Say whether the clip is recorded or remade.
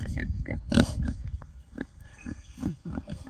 remade